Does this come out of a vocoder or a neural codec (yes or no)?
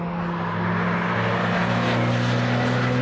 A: no